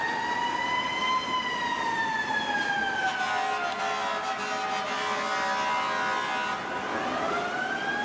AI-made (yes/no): no